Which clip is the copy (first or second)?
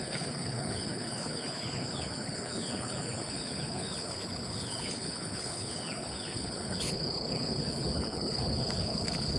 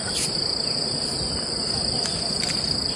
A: first